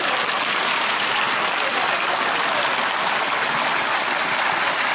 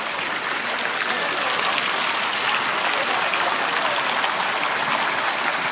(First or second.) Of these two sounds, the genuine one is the second